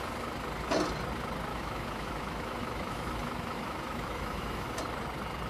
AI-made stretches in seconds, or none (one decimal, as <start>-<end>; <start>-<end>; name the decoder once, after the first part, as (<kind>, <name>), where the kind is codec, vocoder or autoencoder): 1.5-4.8 (autoencoder, DAC-VAE)